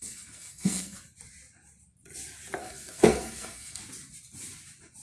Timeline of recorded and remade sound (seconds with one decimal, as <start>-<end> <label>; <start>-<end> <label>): 0.0-1.0 remade; 1.0-2.6 recorded; 2.6-3.8 remade; 3.8-5.0 recorded